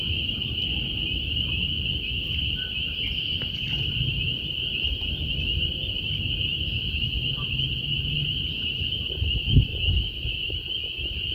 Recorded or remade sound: recorded